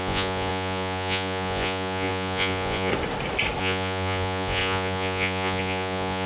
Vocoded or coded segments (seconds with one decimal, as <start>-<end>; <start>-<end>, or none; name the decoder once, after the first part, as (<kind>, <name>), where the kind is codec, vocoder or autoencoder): 0.0-2.9 (vocoder, Vocos); 3.6-6.3